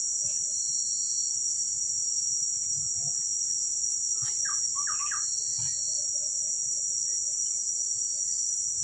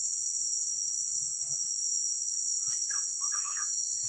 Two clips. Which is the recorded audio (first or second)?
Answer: first